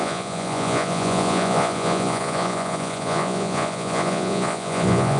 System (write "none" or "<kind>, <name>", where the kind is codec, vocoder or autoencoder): vocoder, Vocos